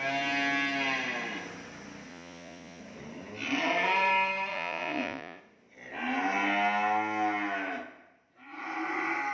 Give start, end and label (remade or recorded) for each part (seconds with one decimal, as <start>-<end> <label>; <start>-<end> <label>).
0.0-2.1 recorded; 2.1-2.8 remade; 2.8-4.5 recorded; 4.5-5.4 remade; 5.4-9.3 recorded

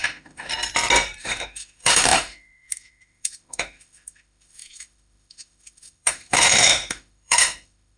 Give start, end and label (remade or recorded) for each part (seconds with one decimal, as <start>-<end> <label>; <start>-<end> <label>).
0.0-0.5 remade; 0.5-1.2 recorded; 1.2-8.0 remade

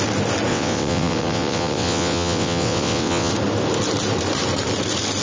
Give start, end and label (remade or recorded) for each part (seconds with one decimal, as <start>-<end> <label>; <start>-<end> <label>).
0.0-0.5 recorded; 0.5-3.3 remade; 3.3-5.2 recorded

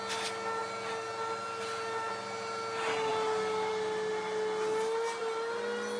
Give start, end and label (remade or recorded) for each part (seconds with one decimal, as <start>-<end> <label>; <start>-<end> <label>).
0.0-6.0 recorded

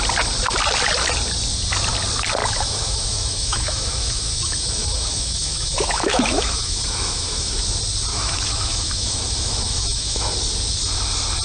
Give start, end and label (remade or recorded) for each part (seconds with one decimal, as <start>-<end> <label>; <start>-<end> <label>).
0.0-2.4 recorded; 2.4-7.6 remade; 7.6-8.1 recorded; 8.1-10.3 remade; 10.3-11.4 recorded

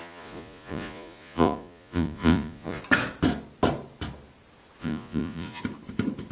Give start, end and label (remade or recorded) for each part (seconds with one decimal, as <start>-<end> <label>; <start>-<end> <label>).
0.0-2.8 remade; 2.8-4.8 recorded; 4.8-5.6 remade; 5.6-6.3 recorded

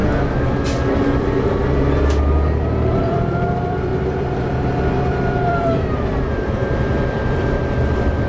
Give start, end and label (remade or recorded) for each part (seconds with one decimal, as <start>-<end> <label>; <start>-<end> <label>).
0.0-3.0 recorded; 3.0-8.3 remade

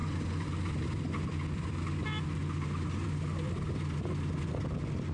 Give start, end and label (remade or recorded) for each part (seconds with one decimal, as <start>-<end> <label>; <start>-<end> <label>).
0.0-1.7 remade; 1.7-2.4 recorded; 2.4-4.0 remade; 4.0-5.1 recorded